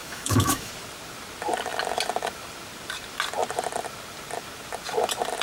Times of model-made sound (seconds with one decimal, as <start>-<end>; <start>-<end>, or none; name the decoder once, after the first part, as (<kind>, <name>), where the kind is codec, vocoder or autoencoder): 0.0-0.7 (autoencoder, DAC-VAE)